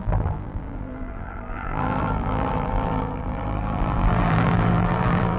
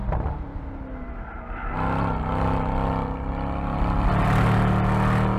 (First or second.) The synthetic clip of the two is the first